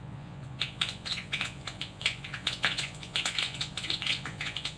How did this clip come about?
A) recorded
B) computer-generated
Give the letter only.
B